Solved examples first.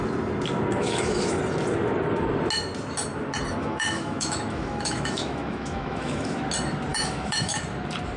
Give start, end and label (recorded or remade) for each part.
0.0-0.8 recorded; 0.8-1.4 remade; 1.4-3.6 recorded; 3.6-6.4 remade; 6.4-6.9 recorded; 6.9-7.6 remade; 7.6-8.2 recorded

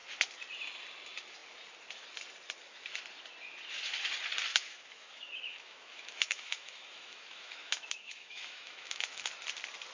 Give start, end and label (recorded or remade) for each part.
0.0-4.5 recorded; 4.5-9.3 remade; 9.3-9.9 recorded

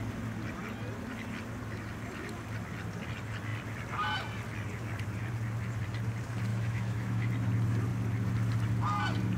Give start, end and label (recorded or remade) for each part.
0.0-6.5 recorded; 6.5-7.3 remade; 7.3-9.4 recorded

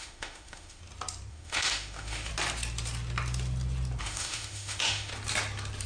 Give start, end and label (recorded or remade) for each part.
0.0-0.8 remade; 0.8-1.3 recorded; 1.3-2.3 remade; 2.3-4.0 recorded; 4.0-5.1 remade; 5.1-5.9 recorded

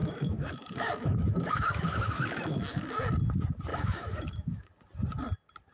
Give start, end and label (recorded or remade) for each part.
0.0-3.1 remade; 3.1-3.7 recorded; 3.7-4.7 remade; 4.7-5.7 recorded

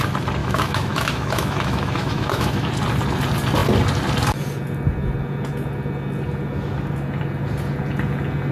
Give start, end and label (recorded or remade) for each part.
0.0-0.4 recorded; 0.4-2.7 remade; 2.7-8.5 recorded

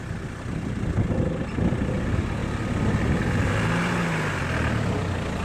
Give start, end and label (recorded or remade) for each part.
0.0-5.4 recorded